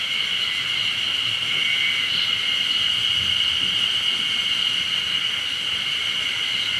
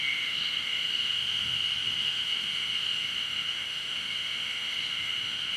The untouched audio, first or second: first